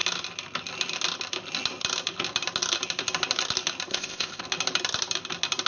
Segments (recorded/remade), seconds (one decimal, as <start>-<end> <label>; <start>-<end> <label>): 0.0-3.9 recorded; 3.9-4.4 remade; 4.4-5.7 recorded